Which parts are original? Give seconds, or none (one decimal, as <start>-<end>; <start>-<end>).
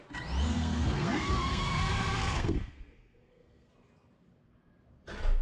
0.0-0.5; 3.7-5.4